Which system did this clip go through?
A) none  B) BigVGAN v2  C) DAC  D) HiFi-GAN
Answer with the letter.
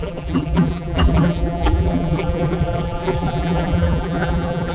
B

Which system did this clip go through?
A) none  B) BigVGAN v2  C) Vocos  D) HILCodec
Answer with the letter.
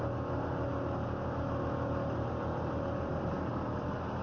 A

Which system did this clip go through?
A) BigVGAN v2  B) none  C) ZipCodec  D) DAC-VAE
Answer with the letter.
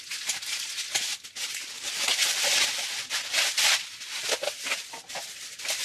B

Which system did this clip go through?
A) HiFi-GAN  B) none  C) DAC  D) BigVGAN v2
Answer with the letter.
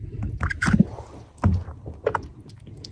B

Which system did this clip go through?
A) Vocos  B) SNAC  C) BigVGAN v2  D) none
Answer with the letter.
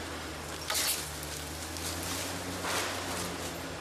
D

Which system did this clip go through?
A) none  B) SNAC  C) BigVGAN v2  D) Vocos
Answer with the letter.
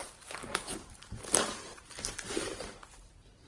C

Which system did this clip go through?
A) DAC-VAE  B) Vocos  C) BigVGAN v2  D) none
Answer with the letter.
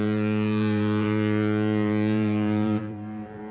C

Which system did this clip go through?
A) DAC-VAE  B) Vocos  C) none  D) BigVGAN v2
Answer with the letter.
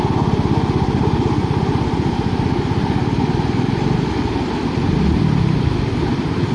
C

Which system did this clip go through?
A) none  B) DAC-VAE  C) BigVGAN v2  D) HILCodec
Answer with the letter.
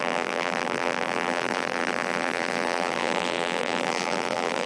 C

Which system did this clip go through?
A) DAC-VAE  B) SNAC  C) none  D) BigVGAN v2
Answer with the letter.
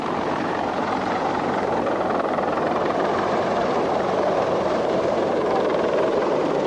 D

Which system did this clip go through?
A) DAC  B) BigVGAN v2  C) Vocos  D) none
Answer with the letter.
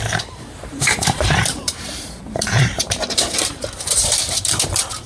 B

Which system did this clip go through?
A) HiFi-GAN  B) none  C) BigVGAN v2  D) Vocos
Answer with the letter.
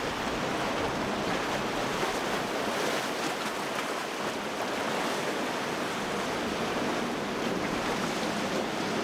B